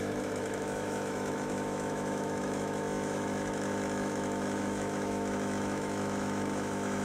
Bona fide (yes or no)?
no